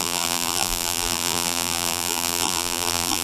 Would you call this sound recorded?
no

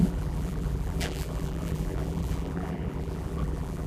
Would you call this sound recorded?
no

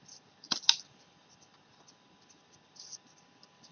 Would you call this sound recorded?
no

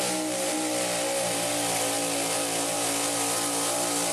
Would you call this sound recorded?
yes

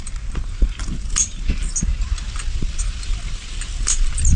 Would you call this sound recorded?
yes